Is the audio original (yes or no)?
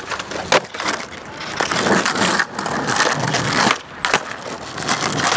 yes